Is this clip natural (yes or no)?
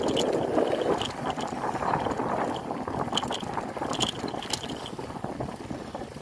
yes